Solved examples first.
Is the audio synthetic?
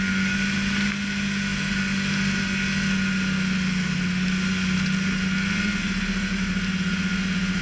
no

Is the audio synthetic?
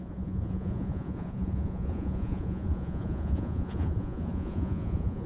yes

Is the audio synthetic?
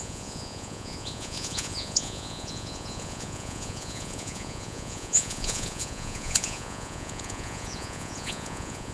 yes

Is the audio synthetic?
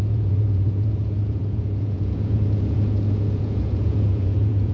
yes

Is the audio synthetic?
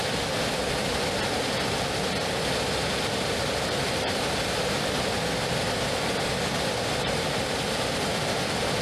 no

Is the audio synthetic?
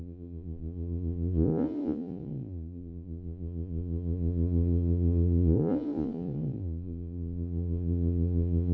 yes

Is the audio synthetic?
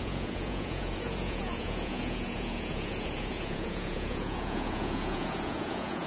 yes